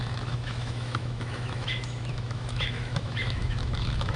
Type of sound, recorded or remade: remade